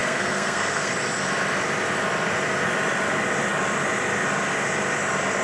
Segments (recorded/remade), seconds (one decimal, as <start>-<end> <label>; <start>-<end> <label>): 0.0-0.9 remade; 0.9-5.4 recorded